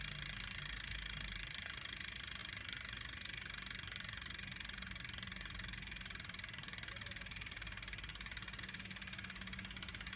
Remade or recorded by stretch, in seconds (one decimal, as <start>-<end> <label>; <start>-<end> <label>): 0.0-8.1 recorded; 8.1-8.6 remade; 8.6-10.2 recorded